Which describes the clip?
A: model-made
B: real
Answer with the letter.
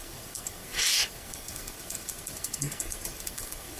A